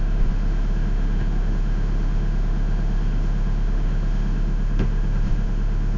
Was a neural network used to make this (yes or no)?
yes